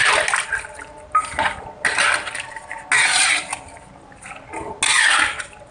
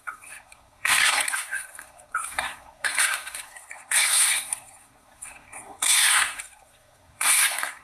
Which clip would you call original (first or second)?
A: first